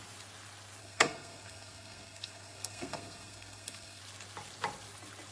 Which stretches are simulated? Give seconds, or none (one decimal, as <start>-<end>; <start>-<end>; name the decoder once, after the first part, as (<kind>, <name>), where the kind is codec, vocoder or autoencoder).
0.8-4.0 (codec, SNAC)